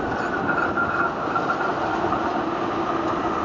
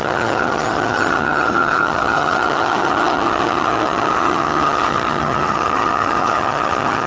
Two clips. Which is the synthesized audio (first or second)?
second